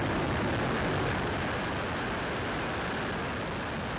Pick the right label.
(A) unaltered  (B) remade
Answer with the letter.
A